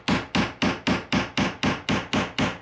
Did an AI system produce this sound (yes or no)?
no